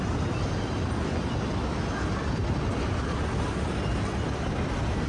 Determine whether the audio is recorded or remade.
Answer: recorded